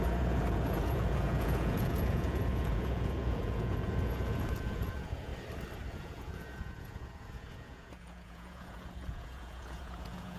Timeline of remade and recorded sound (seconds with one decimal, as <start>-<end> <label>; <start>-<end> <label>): 0.0-5.3 remade; 5.3-5.9 recorded; 5.9-10.4 remade